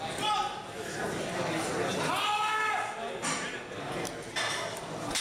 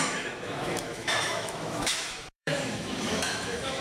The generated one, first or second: second